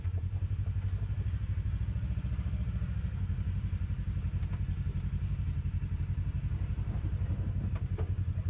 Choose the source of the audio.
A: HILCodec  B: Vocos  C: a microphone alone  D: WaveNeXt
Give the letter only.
C